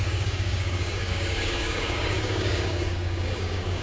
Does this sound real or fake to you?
fake